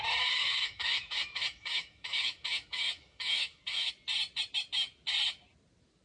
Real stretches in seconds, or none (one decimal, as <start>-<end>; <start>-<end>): 0.0-0.4; 3.9-6.0